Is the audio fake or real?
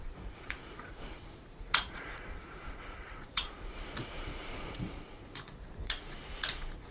fake